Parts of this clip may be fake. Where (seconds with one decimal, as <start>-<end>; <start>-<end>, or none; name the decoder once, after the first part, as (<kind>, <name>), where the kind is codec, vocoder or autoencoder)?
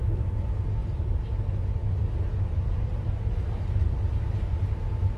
none